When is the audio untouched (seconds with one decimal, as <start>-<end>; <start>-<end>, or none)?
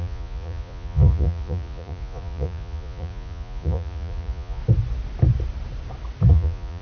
4.6-6.3